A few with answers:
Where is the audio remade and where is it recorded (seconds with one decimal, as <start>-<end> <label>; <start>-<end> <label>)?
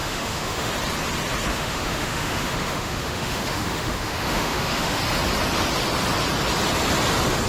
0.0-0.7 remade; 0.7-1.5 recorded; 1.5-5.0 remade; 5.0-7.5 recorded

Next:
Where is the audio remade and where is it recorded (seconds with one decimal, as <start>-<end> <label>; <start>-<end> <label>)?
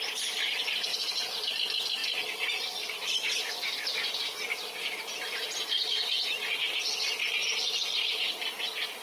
0.0-0.9 recorded; 0.9-1.5 remade; 1.5-2.0 recorded; 2.0-5.3 remade; 5.3-9.0 recorded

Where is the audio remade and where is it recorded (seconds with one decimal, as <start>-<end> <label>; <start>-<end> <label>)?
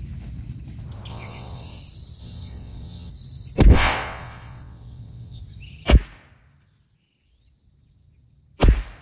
0.0-1.1 recorded; 1.1-1.8 remade; 1.8-2.2 recorded; 2.2-3.1 remade; 3.1-3.7 recorded; 3.7-5.4 remade; 5.4-9.0 recorded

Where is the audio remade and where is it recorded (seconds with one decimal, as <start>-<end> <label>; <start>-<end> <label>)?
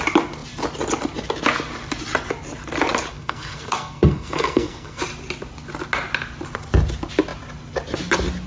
0.0-3.1 recorded; 3.1-5.0 remade; 5.0-8.5 recorded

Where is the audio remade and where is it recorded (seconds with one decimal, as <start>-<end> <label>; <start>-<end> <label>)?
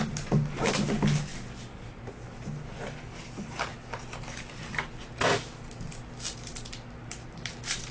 0.0-7.9 recorded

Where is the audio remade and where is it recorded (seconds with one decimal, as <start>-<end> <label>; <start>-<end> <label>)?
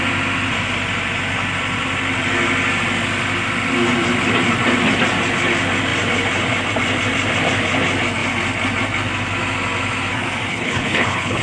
0.0-10.5 recorded; 10.5-11.4 remade